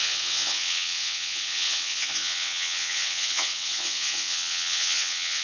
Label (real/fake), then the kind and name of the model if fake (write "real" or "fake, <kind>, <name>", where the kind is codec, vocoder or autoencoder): fake, vocoder, WaveNeXt